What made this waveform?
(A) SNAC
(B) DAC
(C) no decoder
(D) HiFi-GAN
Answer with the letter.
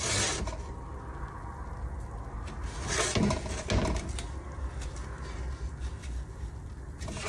C